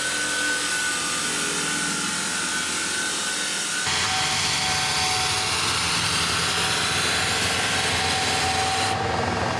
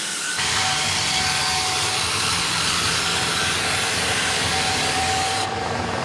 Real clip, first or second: first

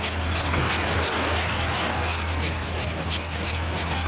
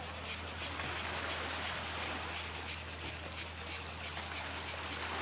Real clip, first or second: second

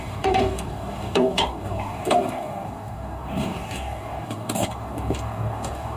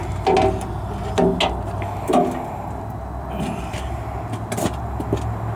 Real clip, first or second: second